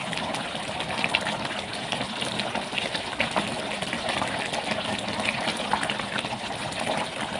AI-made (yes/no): no